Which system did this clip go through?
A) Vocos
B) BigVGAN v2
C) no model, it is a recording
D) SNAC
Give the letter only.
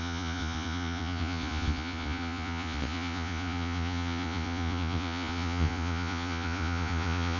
A